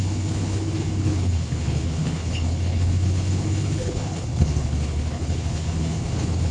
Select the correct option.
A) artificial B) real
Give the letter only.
A